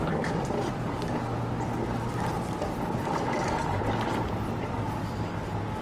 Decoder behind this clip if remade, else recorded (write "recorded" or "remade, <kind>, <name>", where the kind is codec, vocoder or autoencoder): recorded